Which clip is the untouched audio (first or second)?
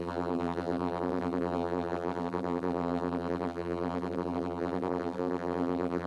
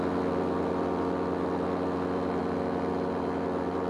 second